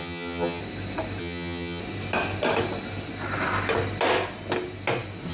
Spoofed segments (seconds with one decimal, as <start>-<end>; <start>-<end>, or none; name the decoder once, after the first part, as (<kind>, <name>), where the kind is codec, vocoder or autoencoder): 0.0-0.6 (vocoder, HiFi-GAN); 1.2-1.8